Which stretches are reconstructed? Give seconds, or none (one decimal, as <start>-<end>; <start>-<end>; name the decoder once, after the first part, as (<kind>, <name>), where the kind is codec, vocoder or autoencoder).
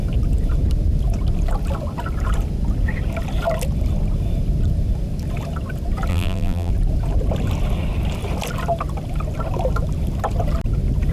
6.1-6.7 (vocoder, BigVGAN v2)